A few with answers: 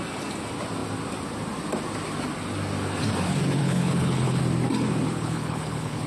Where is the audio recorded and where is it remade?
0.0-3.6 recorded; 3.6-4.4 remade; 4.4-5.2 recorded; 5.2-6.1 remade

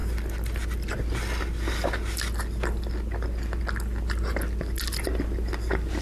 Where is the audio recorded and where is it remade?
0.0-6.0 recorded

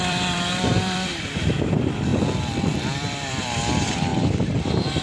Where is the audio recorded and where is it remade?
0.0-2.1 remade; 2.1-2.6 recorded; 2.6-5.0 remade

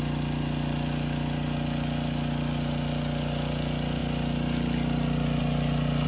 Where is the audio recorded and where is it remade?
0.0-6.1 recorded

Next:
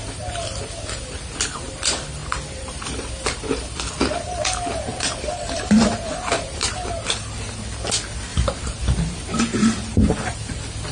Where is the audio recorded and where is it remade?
0.0-2.2 recorded; 2.2-3.1 remade; 3.1-4.9 recorded; 4.9-7.6 remade; 7.6-8.3 recorded; 8.3-10.5 remade; 10.5-10.9 recorded

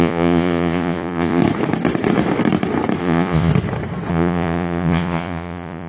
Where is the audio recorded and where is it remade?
0.0-1.4 remade; 1.4-3.0 recorded; 3.0-3.5 remade; 3.5-4.1 recorded; 4.1-5.9 remade

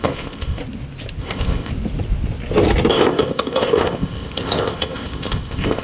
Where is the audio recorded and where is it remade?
0.0-0.6 remade; 0.6-1.2 recorded; 1.2-1.7 remade; 1.7-2.9 recorded; 2.9-5.8 remade